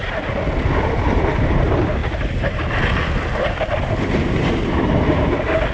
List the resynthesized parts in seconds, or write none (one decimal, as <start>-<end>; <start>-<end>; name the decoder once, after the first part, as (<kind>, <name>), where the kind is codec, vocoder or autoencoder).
none